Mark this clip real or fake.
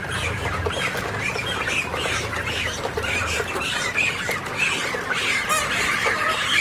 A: real